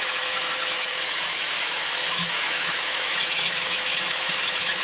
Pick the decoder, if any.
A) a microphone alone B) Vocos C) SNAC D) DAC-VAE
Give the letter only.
D